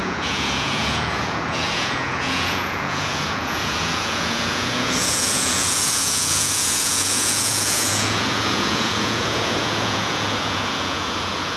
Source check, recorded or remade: remade